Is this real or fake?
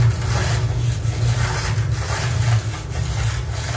real